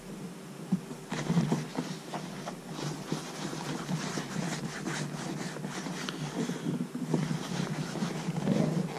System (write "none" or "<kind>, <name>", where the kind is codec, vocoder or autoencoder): none